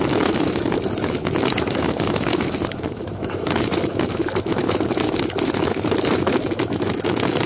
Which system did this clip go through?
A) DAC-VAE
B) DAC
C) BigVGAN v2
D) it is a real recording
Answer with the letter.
A